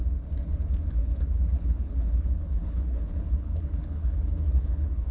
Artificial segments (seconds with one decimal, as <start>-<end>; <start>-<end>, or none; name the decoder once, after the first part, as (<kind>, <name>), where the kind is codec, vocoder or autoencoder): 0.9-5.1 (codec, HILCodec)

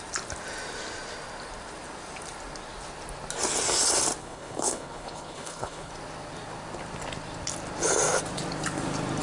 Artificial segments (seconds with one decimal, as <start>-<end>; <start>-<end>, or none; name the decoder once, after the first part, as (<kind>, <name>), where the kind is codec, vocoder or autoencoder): 4.2-5.9 (codec, HILCodec)

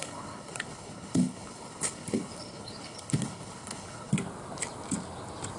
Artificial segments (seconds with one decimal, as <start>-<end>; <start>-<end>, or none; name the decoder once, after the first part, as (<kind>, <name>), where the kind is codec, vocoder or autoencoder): 0.0-4.1 (codec, HILCodec)

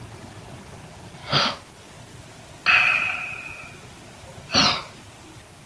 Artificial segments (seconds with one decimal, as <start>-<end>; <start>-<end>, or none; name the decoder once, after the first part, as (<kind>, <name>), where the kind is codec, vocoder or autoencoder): none